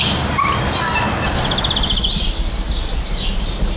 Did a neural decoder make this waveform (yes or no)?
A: no